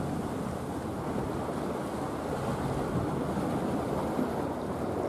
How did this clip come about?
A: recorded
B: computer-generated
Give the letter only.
A